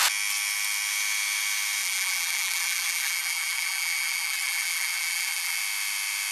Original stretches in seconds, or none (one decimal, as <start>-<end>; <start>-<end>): 0.0-1.8; 5.6-6.3